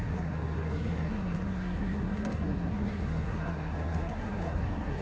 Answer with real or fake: fake